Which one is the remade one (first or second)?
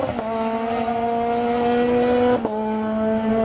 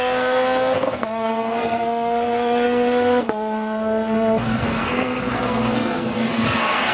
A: second